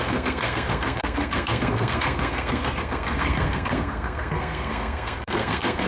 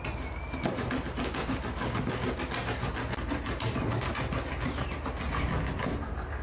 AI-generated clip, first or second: first